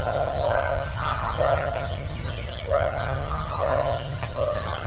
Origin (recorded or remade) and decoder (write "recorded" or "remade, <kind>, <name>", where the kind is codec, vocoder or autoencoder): remade, vocoder, HiFi-GAN